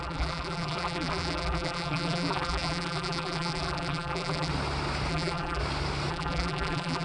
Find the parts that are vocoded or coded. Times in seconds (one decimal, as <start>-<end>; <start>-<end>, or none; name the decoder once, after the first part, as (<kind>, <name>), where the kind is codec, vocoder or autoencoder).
0.0-4.5 (vocoder, BigVGAN v2); 5.1-5.6; 6.1-7.0